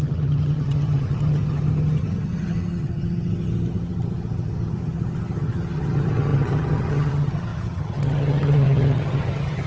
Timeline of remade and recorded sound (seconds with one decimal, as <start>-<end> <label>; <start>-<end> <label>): 0.0-9.7 remade